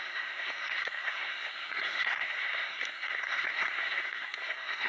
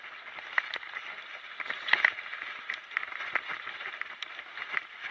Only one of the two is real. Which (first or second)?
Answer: second